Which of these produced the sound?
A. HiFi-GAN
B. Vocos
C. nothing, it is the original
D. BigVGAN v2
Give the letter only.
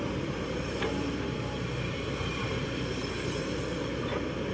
D